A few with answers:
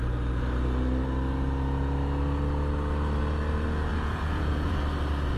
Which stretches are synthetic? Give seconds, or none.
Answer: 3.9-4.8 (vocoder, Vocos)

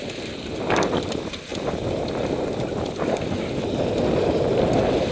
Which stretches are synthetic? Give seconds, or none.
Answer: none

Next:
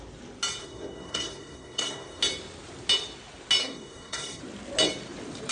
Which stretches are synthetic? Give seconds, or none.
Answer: 0.6-2.2 (codec, SNAC); 3.6-4.4